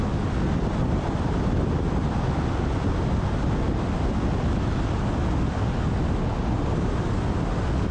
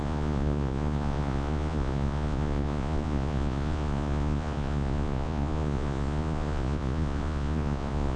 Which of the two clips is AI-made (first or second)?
second